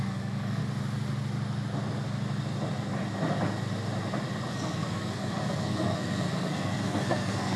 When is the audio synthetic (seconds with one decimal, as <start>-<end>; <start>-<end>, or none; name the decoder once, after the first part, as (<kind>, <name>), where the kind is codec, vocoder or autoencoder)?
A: 0.0-0.6 (codec, SNAC); 4.5-7.6